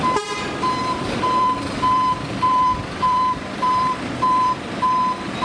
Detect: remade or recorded remade